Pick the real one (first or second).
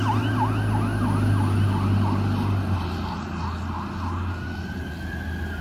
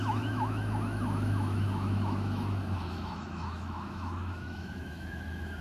first